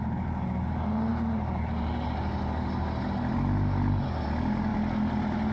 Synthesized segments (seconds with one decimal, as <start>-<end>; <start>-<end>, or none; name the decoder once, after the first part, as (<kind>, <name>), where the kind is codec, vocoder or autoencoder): none